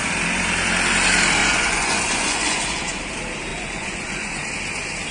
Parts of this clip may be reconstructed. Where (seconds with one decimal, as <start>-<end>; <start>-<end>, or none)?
1.4-3.0; 3.5-4.5